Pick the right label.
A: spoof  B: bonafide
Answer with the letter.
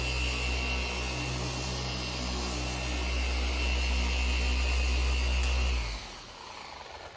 B